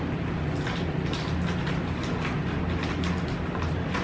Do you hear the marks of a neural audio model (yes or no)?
no